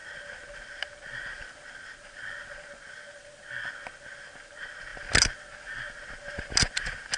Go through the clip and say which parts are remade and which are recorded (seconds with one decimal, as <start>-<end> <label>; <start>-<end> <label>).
0.0-7.2 recorded